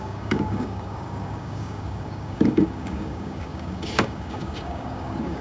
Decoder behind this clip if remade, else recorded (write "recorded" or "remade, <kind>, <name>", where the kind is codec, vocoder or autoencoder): remade, codec, DAC